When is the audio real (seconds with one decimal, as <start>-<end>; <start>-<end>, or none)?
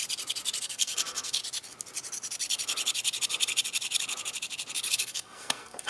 0.0-0.6; 1.4-4.9